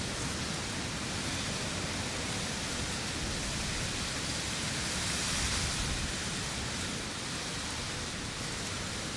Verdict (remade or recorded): recorded